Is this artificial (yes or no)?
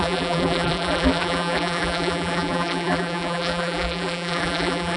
yes